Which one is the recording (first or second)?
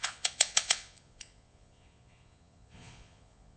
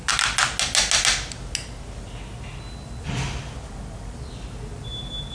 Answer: second